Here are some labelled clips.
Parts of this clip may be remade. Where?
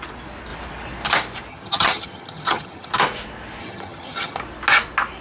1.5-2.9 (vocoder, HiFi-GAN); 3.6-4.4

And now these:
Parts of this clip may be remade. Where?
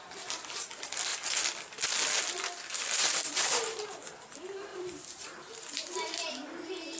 2.7-4.0 (vocoder, BigVGAN v2); 4.7-6.3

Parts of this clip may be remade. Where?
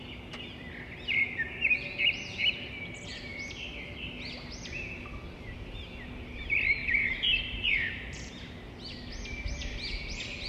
6.8-8.3 (vocoder, BigVGAN v2)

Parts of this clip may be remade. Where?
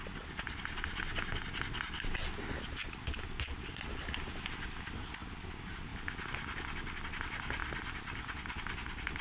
none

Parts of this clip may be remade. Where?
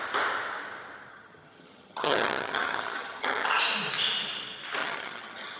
1.1-3.6 (vocoder, HiFi-GAN); 4.8-5.6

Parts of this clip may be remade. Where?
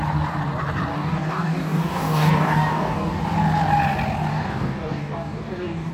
0.9-3.2 (codec, DAC); 4.3-5.9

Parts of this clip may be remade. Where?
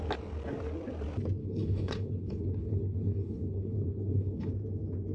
1.4-4.5 (codec, HILCodec)